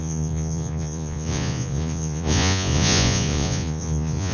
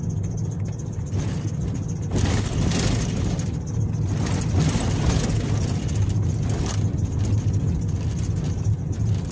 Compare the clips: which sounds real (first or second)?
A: second